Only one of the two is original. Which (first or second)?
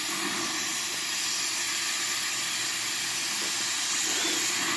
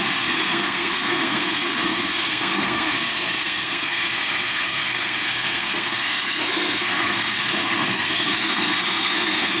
first